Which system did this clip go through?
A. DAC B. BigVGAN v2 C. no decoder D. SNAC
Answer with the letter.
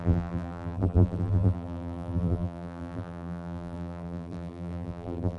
B